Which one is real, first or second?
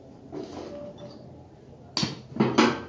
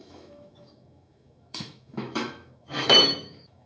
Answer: first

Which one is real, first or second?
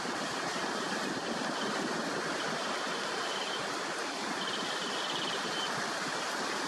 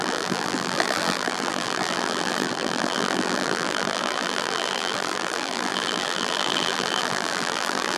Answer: first